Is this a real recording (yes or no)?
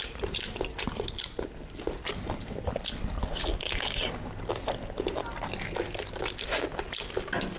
yes